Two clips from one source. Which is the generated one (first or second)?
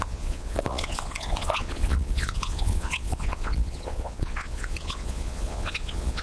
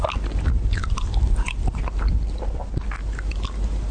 first